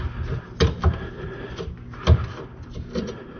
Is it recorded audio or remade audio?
recorded